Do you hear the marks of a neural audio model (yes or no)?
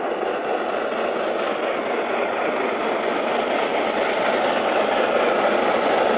no